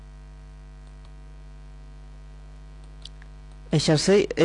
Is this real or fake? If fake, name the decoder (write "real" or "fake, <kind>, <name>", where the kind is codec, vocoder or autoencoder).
real